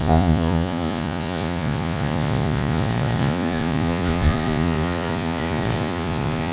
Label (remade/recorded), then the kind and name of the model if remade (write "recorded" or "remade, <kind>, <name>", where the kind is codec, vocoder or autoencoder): remade, vocoder, Vocos